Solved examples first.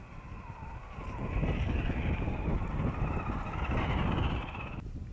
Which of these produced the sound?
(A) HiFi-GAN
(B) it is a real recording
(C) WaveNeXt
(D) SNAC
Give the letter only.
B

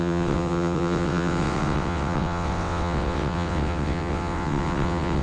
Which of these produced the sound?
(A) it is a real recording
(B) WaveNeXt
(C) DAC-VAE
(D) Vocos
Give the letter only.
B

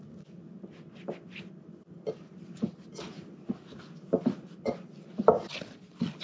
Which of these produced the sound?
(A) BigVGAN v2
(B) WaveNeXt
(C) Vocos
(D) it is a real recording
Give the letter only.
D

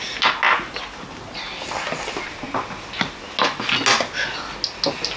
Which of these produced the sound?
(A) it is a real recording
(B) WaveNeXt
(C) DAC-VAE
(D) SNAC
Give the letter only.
A